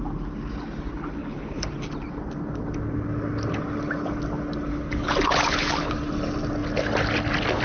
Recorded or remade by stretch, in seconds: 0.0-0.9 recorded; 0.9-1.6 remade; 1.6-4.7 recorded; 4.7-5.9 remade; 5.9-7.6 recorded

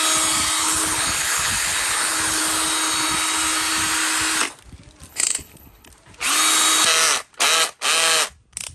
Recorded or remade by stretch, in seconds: 0.0-0.6 recorded; 0.6-2.4 remade; 2.4-5.1 recorded; 5.1-5.9 remade; 5.9-8.7 recorded

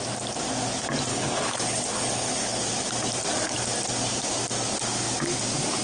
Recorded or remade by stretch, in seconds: 0.0-1.1 recorded; 1.1-2.6 remade; 2.6-5.8 recorded

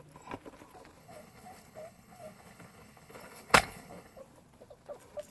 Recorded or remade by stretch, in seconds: 0.0-1.0 recorded; 1.0-4.2 remade; 4.2-5.3 recorded